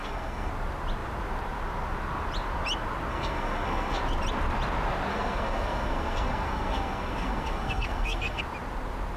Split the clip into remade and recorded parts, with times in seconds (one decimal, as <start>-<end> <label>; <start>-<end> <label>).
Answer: 0.0-0.5 remade; 0.5-3.1 recorded; 3.1-4.0 remade; 4.0-5.1 recorded; 5.1-8.4 remade; 8.4-9.2 recorded